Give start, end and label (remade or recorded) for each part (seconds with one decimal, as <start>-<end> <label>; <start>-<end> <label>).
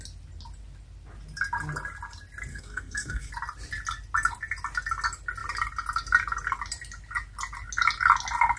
0.0-2.5 recorded; 2.5-3.3 remade; 3.3-8.6 recorded